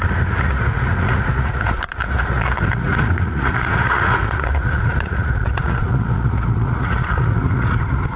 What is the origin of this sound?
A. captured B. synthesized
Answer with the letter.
B